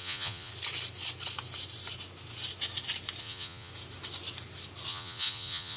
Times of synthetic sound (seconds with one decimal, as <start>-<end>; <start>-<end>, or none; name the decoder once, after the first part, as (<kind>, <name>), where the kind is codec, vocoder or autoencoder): 0.0-0.5 (vocoder, Vocos); 3.2-3.7; 4.9-5.8